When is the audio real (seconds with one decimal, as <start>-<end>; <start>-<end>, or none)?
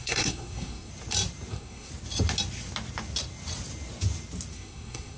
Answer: 0.9-1.5; 1.9-4.5